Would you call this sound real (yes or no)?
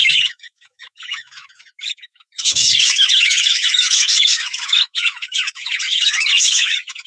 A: no